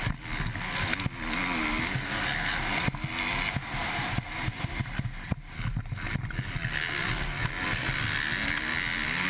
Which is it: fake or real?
real